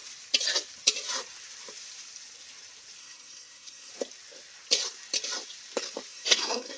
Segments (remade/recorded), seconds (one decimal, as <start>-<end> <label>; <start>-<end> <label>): 0.0-3.0 recorded; 3.0-3.9 remade; 3.9-6.1 recorded; 6.1-6.8 remade